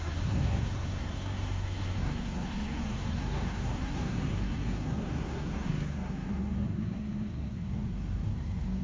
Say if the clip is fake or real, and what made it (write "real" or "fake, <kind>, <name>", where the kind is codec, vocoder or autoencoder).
fake, codec, SNAC